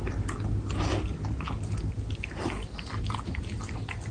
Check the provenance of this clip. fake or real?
real